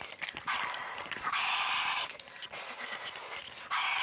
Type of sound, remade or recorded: recorded